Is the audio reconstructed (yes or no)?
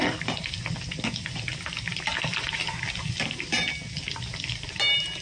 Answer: no